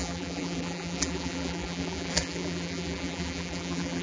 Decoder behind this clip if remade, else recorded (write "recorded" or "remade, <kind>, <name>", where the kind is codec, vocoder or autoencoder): remade, vocoder, BigVGAN v2